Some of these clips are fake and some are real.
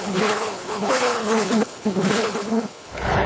fake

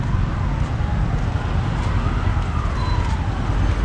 real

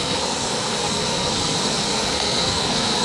fake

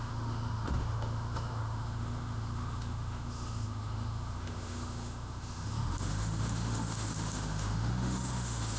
fake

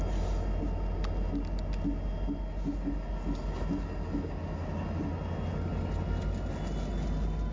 real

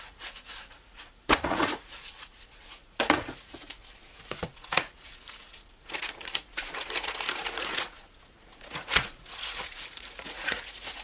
fake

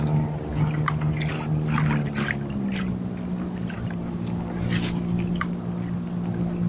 real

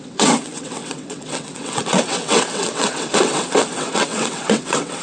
fake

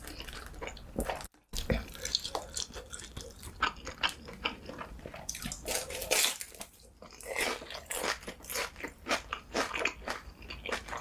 real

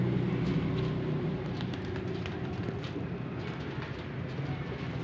real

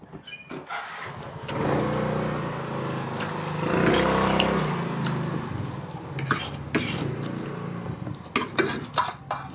real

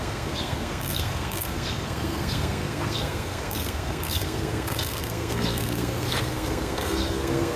fake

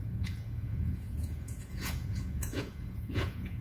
fake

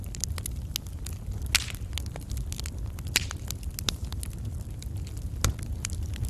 real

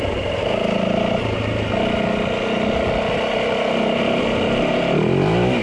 real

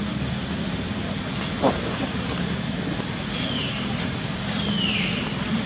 real